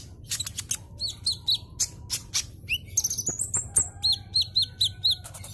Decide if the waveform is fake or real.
real